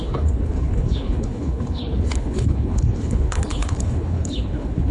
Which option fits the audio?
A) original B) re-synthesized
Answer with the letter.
B